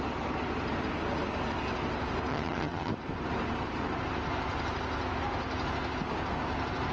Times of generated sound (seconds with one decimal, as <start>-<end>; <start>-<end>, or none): 2.3-2.9